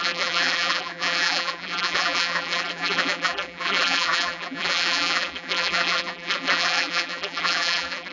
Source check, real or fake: fake